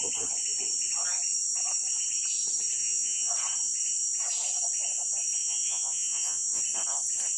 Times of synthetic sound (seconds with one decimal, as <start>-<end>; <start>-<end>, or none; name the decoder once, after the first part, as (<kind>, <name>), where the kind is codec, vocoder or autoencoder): 2.8-3.3 (vocoder, Vocos); 5.4-6.6